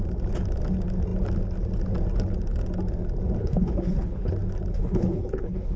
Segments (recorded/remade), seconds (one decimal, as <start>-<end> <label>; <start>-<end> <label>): 0.0-3.4 recorded; 3.4-4.3 remade; 4.3-4.7 recorded; 4.7-5.8 remade